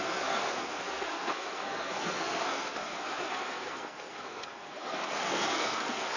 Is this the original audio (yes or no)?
no